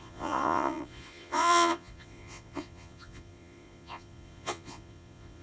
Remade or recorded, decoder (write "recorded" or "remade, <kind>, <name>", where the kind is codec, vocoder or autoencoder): remade, vocoder, Vocos